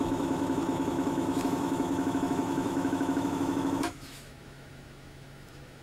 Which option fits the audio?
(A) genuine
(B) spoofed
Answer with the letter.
B